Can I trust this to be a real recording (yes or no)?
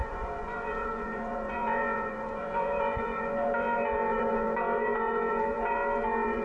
no